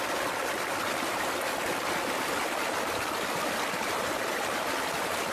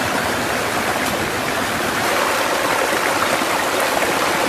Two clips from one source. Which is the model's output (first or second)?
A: second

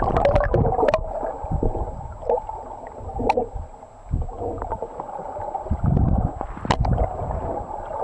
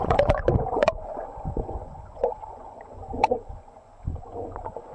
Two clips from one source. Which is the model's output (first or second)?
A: second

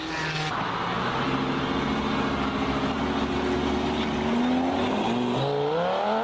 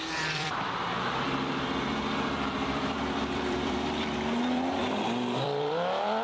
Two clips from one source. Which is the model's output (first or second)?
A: second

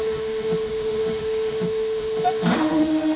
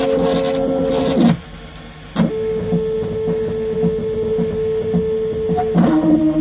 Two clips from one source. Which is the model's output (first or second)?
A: first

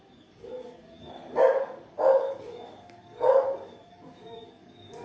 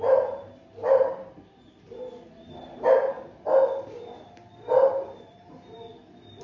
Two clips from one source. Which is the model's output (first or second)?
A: first